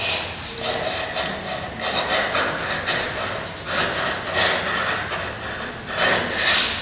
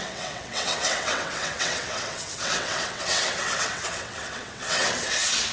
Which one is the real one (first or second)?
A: first